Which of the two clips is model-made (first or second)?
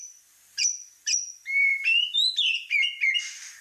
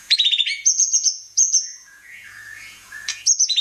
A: second